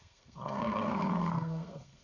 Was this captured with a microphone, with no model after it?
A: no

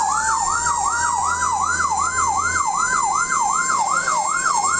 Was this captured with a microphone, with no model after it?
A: yes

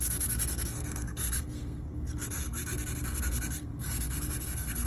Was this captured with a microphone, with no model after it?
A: no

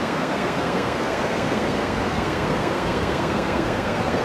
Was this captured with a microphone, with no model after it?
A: no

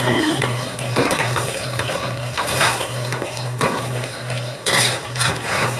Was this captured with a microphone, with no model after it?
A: no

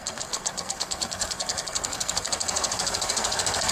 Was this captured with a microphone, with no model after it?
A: no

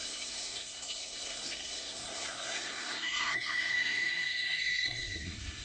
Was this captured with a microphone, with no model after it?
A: no